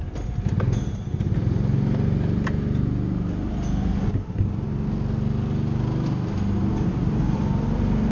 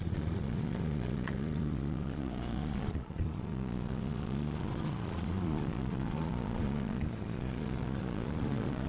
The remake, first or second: second